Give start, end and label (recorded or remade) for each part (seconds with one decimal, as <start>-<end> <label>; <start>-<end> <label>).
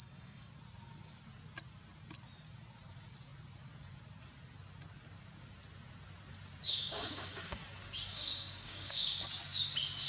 0.0-0.5 remade; 0.5-6.7 recorded; 6.7-7.6 remade; 7.6-8.1 recorded; 8.1-9.2 remade; 9.2-10.1 recorded